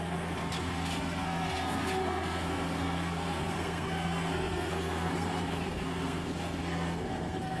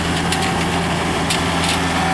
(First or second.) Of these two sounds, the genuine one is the second